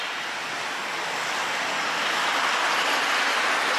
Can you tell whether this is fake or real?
real